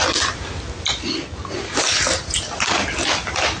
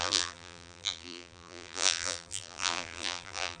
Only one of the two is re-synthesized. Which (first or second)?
second